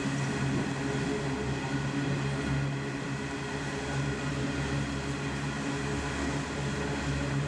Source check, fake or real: real